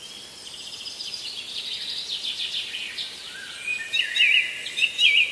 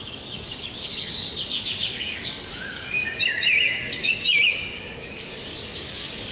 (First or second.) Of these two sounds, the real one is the first